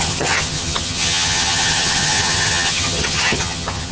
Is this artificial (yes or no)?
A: yes